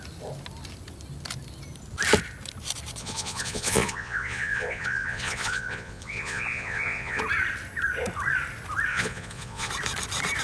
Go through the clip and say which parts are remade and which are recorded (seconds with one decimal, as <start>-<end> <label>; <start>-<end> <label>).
0.0-3.0 recorded; 3.0-7.2 remade; 7.2-8.9 recorded; 8.9-9.7 remade; 9.7-10.4 recorded